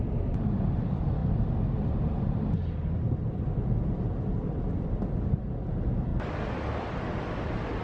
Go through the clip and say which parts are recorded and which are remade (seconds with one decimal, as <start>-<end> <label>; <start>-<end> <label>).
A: 0.0-7.8 recorded